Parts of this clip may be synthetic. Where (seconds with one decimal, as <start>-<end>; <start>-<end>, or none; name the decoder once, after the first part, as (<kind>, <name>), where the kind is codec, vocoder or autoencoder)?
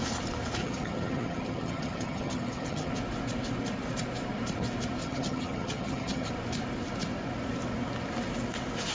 0.6-2.9 (vocoder, HiFi-GAN); 5.0-6.3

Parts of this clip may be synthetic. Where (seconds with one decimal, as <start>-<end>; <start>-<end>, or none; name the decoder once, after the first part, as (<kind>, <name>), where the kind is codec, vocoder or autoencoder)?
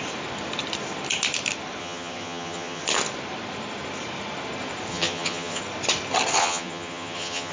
1.8-2.8 (vocoder, HiFi-GAN); 4.9-5.6; 6.4-7.5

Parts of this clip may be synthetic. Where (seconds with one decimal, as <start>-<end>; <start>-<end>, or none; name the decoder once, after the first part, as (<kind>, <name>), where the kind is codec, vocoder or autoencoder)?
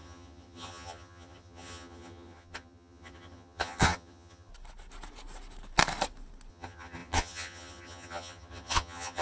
0.0-4.5 (vocoder, HiFi-GAN); 6.5-9.2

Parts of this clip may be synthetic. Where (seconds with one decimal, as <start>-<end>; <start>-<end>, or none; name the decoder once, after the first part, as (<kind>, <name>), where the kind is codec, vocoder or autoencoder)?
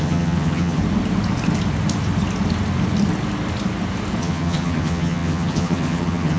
0.0-0.8 (vocoder, HiFi-GAN); 4.2-6.4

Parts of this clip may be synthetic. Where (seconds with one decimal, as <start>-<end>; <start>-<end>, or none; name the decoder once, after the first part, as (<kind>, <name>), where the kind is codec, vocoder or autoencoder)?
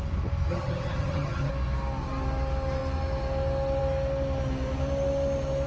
0.5-1.5 (vocoder, HiFi-GAN)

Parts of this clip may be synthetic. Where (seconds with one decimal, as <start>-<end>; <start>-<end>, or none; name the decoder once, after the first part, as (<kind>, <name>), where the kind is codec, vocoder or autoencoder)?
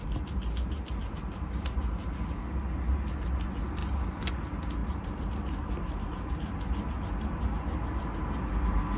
none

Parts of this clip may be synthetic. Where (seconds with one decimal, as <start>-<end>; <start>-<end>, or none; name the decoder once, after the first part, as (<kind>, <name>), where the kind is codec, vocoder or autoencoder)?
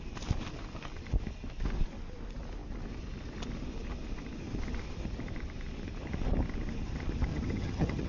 7.3-8.1 (vocoder, HiFi-GAN)